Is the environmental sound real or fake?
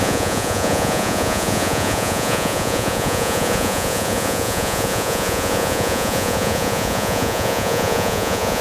fake